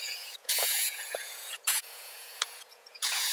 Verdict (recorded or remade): remade